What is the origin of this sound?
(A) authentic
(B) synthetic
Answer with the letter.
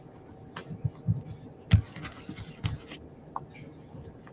A